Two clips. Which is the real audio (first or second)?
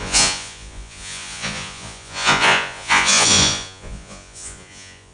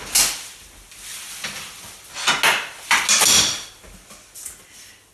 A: second